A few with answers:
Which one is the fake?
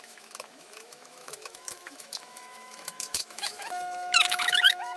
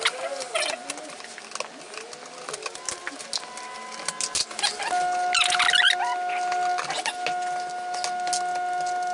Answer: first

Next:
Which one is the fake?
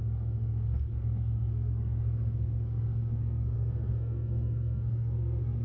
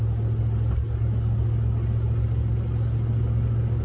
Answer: first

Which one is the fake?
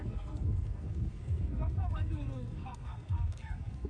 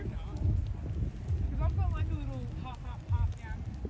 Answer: first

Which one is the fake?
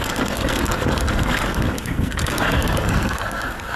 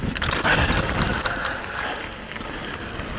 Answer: first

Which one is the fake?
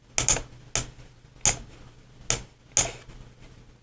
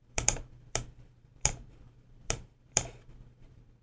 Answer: second